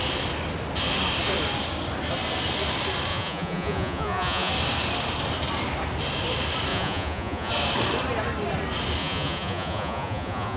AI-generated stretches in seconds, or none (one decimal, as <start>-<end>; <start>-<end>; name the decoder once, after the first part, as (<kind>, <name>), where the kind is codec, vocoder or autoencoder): 3.1-4.5 (vocoder, Vocos); 6.7-7.5; 9.0-10.6